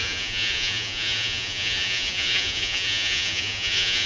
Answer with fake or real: fake